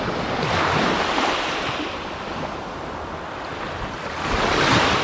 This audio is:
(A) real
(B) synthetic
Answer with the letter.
A